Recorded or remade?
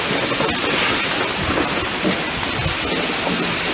recorded